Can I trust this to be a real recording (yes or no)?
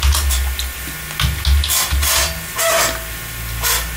yes